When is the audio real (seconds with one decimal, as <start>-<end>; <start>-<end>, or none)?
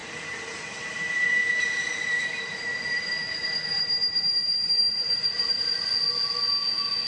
5.9-7.1